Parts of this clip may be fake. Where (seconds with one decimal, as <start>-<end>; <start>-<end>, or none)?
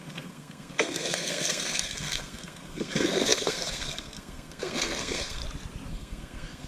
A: 0.0-5.4; 5.9-6.7